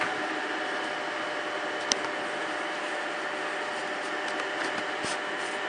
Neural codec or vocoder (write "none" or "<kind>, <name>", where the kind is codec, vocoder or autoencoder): none